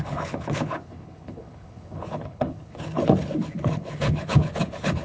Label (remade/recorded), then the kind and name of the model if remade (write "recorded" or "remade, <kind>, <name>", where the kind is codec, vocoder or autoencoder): remade, codec, HILCodec